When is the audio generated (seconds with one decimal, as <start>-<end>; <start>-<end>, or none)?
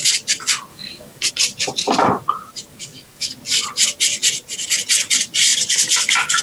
0.7-1.3; 2.7-3.3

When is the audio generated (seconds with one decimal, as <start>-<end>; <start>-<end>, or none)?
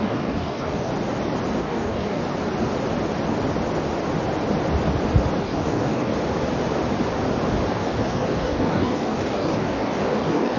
0.0-0.9; 1.6-2.2; 5.4-6.1; 7.7-10.6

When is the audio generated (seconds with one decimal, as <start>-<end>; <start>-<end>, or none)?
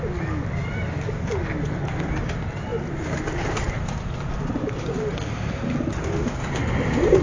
none